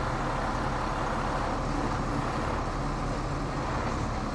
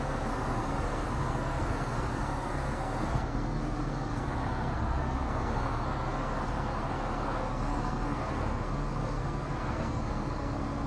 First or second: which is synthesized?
second